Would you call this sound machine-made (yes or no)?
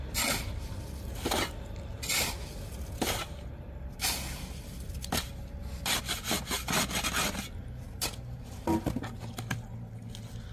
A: no